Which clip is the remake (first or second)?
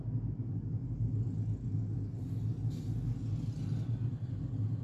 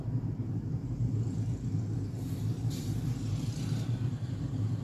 second